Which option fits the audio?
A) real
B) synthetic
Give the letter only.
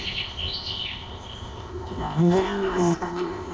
B